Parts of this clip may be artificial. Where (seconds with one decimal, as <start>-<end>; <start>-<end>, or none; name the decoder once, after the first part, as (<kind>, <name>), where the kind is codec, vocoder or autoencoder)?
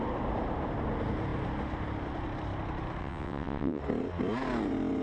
3.0-3.8 (vocoder, WaveNeXt)